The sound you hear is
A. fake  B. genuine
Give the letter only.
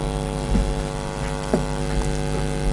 B